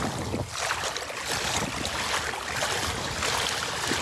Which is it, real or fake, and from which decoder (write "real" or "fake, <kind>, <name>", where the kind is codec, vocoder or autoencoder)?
real